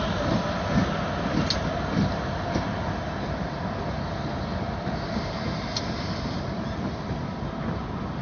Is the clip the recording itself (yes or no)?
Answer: yes